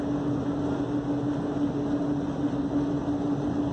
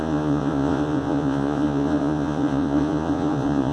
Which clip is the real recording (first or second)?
first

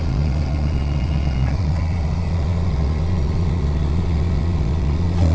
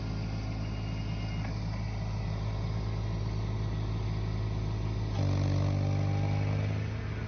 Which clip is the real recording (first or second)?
second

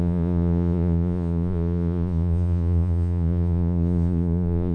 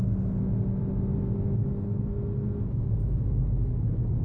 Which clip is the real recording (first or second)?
second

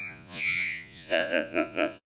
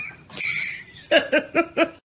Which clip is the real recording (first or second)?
second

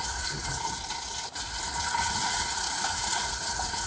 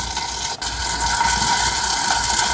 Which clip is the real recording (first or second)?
second